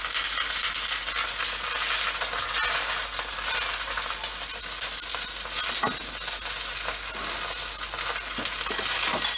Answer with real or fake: real